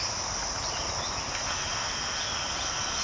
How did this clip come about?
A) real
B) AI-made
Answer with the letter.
A